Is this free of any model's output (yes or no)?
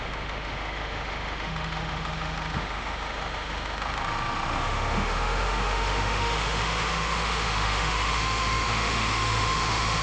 no